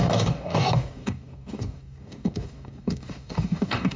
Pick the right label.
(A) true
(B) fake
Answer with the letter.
B